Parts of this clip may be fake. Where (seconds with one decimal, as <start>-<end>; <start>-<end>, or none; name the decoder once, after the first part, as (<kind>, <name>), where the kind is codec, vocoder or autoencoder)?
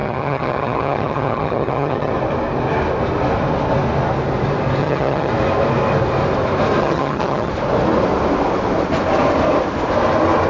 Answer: 0.0-2.1 (vocoder, HiFi-GAN); 4.8-5.3; 6.8-7.5